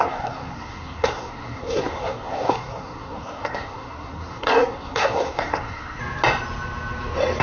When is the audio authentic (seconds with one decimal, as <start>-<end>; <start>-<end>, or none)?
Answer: 6.0-7.4